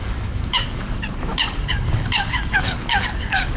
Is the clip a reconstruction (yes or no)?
yes